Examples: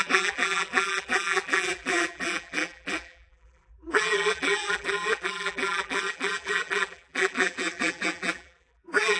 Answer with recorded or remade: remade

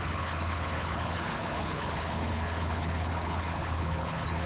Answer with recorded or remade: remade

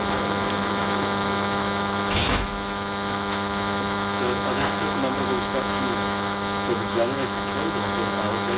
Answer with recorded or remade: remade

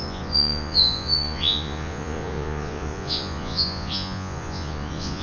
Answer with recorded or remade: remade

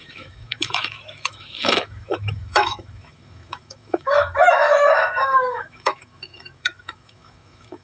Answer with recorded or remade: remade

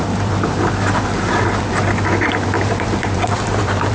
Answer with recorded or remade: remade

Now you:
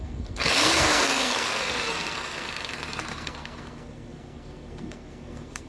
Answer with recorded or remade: remade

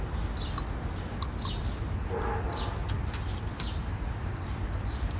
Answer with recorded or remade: recorded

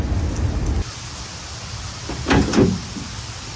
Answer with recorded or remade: recorded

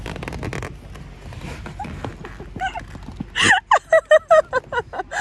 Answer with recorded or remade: recorded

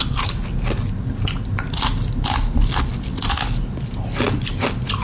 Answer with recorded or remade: recorded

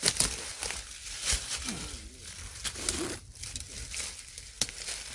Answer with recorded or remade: recorded